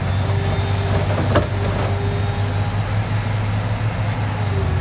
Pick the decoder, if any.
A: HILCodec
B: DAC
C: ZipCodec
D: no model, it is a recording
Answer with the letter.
D